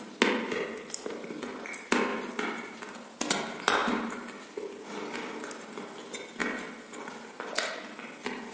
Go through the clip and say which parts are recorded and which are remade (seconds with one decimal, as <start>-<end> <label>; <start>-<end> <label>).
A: 0.0-8.5 recorded